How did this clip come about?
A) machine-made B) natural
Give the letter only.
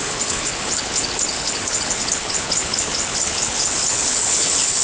A